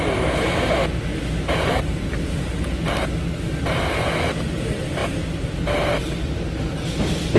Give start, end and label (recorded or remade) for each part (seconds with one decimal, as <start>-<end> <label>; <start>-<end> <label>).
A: 0.0-1.1 recorded; 1.1-3.0 remade; 3.0-7.4 recorded